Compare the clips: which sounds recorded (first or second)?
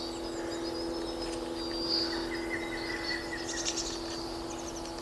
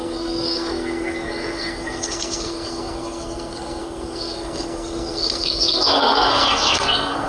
first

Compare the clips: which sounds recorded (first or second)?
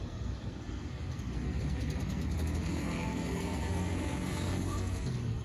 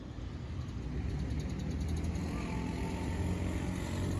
second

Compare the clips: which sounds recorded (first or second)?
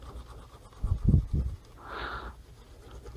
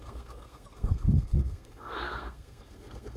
first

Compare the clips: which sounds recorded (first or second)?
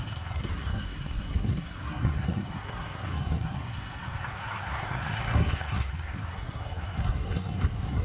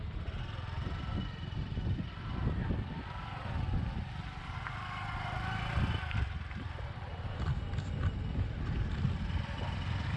second